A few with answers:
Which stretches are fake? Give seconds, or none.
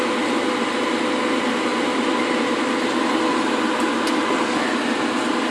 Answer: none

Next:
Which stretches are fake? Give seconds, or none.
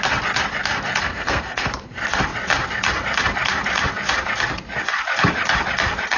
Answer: 1.0-1.7 (codec, SNAC)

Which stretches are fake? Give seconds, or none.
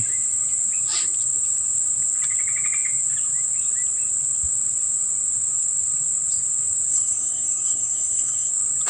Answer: 6.9-8.5 (codec, SNAC)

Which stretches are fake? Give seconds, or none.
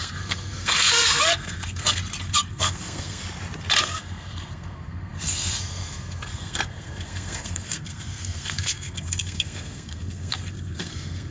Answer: 0.0-2.0 (codec, SNAC); 2.5-3.2; 3.8-11.3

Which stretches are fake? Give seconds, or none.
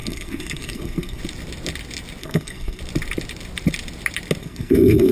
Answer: 0.0-1.2 (codec, SNAC); 2.2-2.8; 4.4-5.1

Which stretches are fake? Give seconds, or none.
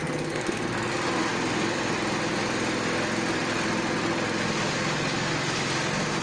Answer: 0.0-0.9 (codec, SNAC)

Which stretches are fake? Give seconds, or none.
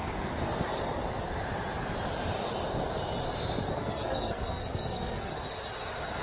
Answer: 3.7-5.3 (codec, SNAC)